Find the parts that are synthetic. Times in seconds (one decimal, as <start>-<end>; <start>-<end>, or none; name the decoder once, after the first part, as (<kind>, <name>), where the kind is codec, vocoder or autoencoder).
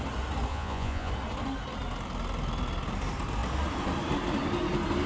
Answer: 0.5-1.1 (vocoder, Vocos)